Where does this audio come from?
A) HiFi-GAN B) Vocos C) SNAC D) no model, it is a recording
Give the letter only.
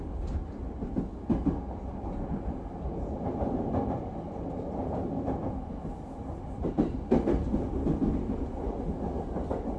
D